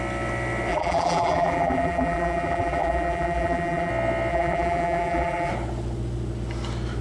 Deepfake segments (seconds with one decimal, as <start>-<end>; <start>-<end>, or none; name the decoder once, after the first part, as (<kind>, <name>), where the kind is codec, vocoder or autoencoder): 0.7-3.9 (vocoder, BigVGAN v2); 4.3-5.5